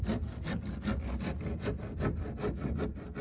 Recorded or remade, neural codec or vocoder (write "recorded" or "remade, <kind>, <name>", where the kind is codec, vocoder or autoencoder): recorded